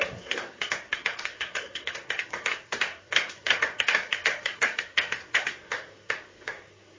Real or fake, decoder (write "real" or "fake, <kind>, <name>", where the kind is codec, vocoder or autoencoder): fake, codec, SNAC